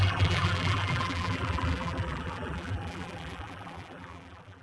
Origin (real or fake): fake